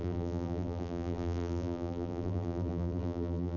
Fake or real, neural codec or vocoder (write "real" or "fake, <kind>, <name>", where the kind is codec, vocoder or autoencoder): fake, vocoder, BigVGAN v2